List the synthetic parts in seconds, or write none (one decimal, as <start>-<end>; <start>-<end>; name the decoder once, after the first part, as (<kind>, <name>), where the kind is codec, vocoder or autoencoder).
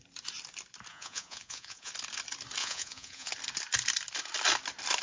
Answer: 0.9-1.9 (vocoder, Vocos); 2.6-3.3